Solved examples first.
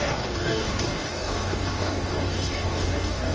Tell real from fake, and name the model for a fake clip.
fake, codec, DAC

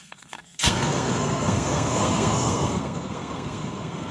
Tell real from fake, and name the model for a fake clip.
fake, codec, SNAC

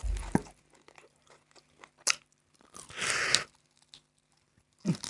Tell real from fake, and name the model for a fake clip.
real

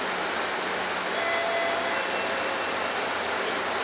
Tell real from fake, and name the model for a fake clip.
real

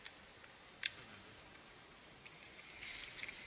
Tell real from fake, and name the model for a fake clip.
real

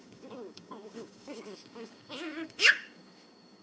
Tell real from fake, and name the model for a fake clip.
fake, codec, DAC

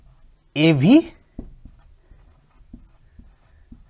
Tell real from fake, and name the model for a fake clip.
real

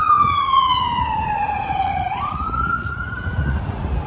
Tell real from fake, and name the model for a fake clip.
fake, vocoder, Vocos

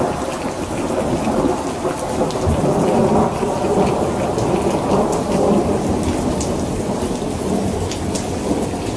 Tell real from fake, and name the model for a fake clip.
real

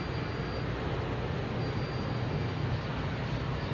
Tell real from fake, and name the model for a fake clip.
real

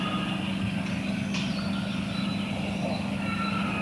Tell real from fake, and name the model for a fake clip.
real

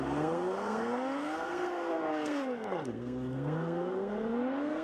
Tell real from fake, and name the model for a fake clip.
fake, codec, SNAC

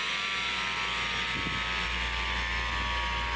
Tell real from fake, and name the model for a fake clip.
real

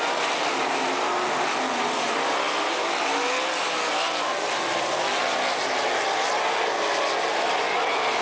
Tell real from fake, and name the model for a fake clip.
real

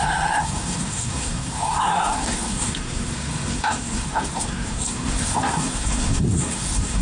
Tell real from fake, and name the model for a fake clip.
fake, codec, SNAC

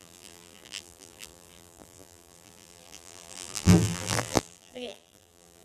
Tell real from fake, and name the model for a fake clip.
fake, vocoder, BigVGAN v2